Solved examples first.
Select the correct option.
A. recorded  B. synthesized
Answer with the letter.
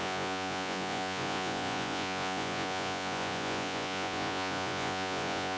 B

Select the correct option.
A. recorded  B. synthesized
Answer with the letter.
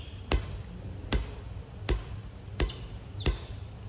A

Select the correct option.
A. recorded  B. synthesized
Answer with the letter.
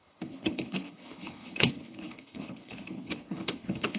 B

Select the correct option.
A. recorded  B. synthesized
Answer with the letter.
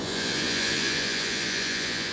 B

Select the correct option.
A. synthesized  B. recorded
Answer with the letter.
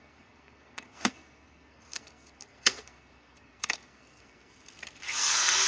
A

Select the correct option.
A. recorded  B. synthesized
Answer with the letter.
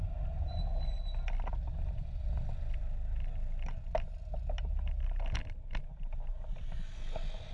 A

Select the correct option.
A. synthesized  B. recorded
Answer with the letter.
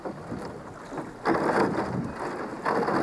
B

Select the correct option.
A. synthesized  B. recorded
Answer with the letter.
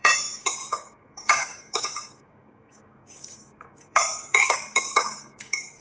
A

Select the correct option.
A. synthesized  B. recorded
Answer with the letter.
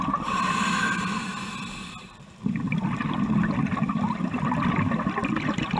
B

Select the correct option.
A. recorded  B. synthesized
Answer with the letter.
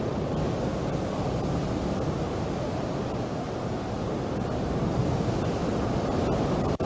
A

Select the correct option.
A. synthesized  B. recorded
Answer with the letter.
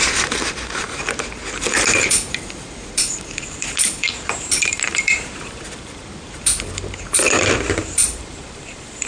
A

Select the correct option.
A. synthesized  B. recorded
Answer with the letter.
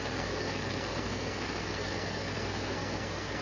A